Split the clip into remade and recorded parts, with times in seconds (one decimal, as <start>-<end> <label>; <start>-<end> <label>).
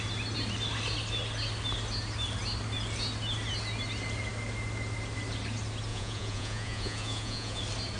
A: 0.0-5.9 recorded; 5.9-7.6 remade; 7.6-8.0 recorded